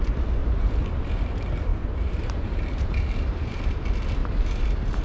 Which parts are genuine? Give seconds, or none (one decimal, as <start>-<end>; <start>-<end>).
0.0-0.4; 1.1-1.7; 3.7-4.2